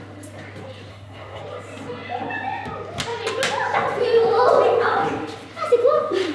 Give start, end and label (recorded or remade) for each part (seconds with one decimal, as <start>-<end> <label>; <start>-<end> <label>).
0.0-0.9 recorded; 0.9-1.4 remade; 1.4-6.3 recorded